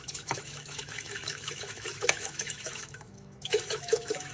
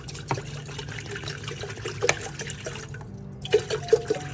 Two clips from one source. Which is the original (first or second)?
second